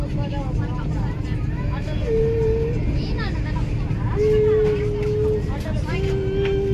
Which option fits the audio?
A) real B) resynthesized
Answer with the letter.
A